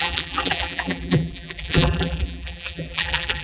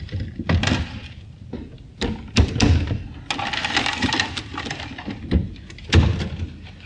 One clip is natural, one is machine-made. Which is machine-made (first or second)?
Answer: first